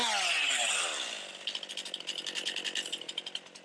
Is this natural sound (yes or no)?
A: yes